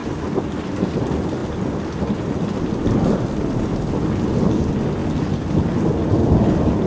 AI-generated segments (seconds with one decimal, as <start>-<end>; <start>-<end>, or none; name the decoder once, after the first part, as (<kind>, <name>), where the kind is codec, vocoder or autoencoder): none